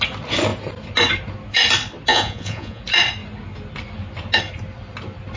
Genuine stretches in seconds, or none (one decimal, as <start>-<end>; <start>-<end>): 0.0-2.1; 2.8-5.4